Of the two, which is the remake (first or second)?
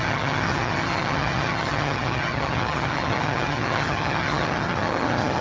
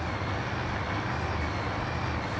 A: first